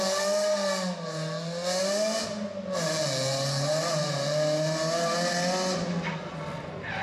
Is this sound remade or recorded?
recorded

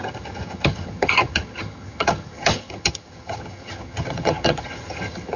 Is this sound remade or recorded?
remade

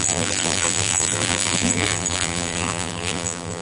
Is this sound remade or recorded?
remade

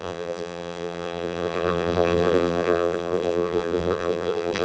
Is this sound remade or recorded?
remade